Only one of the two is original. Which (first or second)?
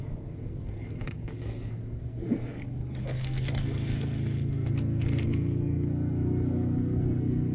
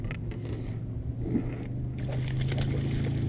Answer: second